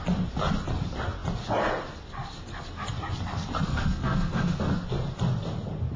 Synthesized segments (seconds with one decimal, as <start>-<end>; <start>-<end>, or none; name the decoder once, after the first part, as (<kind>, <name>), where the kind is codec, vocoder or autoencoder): 3.7-4.6 (codec, SNAC)